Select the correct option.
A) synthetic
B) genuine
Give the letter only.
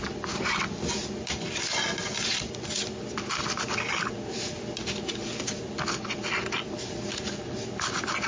B